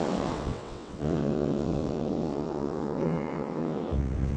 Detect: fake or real fake